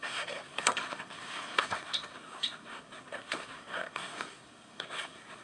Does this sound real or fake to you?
fake